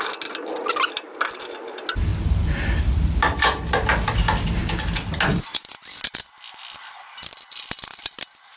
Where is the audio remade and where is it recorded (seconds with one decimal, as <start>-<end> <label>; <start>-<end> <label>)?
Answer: 0.0-8.6 recorded